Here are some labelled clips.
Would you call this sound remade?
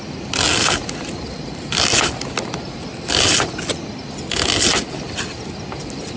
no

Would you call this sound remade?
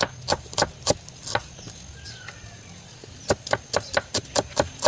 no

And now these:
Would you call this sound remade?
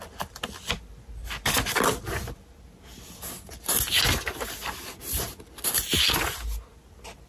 no